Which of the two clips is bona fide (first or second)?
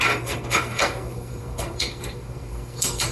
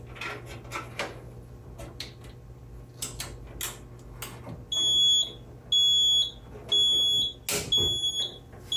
second